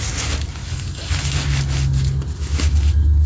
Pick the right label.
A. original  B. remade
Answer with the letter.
A